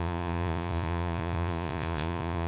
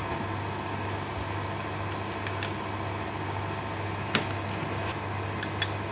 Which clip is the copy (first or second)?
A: first